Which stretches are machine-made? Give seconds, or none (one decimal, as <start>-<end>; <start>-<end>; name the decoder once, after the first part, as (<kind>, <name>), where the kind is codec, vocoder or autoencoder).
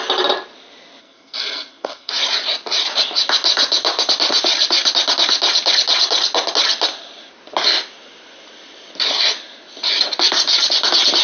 1.0-2.1 (codec, SNAC)